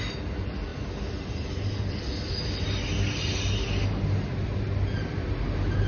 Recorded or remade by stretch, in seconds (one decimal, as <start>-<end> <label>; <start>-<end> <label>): 0.0-5.9 recorded